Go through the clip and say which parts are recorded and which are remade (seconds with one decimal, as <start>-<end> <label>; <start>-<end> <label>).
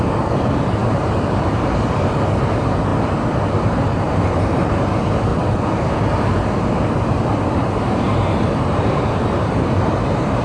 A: 0.0-2.9 remade; 2.9-3.6 recorded; 3.6-5.3 remade; 5.3-7.7 recorded; 7.7-10.4 remade